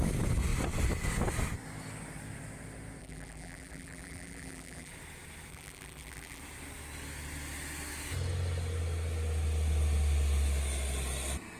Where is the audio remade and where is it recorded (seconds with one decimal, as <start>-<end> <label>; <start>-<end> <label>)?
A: 0.0-3.0 recorded; 3.0-4.9 remade; 4.9-5.5 recorded; 5.5-6.4 remade; 6.4-11.6 recorded